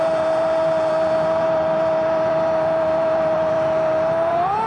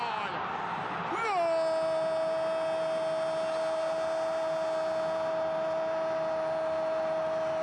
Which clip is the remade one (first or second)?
first